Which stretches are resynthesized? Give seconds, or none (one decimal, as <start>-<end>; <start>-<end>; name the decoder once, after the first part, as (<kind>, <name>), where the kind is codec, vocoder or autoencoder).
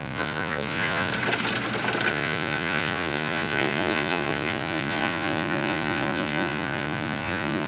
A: 0.0-1.1 (vocoder, Vocos); 2.1-7.7